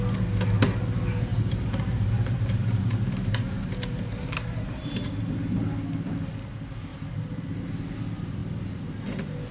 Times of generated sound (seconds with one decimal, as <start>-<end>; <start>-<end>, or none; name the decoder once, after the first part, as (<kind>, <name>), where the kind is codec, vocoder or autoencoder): 1.3-4.9 (vocoder, BigVGAN v2); 6.9-7.6